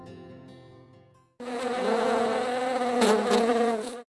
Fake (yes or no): yes